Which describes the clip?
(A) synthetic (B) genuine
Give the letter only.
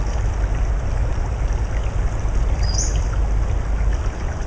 B